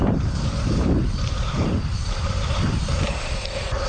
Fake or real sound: fake